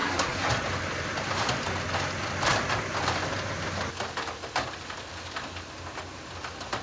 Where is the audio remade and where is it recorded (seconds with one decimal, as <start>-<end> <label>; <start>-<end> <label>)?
0.0-0.5 remade; 0.5-6.8 recorded